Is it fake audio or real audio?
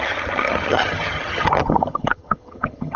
fake